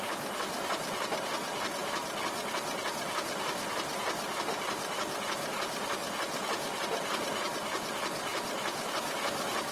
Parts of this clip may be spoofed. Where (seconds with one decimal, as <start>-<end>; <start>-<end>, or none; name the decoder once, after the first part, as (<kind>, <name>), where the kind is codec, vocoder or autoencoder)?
none